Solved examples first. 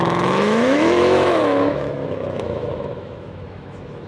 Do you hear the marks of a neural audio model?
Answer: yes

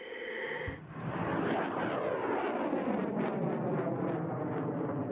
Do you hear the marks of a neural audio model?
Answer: no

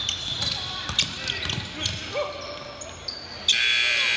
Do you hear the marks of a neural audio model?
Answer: no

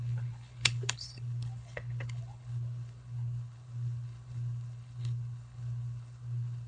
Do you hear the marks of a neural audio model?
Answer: yes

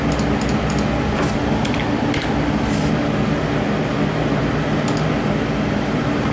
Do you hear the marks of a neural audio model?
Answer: no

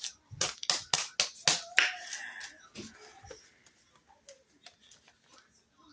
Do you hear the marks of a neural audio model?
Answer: no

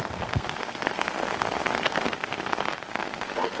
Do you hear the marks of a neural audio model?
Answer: yes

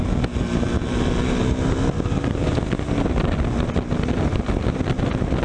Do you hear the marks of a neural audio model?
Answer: no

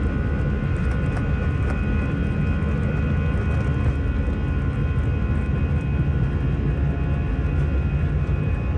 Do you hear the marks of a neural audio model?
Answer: no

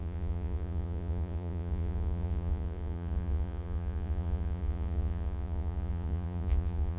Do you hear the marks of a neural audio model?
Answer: yes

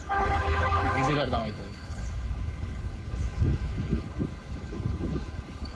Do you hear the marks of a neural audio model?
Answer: yes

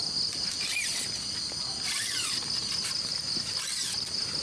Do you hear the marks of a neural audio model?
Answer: no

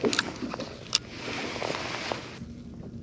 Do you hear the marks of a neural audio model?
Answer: no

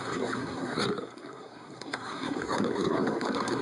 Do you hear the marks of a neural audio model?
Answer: yes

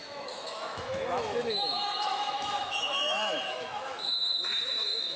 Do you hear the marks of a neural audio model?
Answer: yes